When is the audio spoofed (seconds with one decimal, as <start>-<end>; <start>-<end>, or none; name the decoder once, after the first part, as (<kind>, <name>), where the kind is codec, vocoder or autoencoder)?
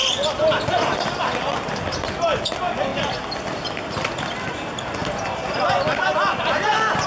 0.0-2.1 (vocoder, BigVGAN v2)